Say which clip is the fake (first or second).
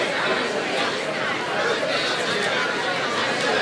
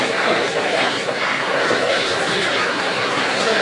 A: second